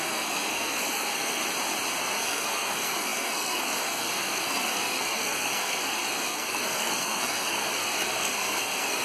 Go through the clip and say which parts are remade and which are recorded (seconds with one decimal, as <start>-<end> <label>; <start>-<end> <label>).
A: 0.0-1.4 remade; 1.4-2.0 recorded; 2.0-9.0 remade